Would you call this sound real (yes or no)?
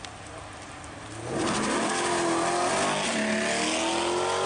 yes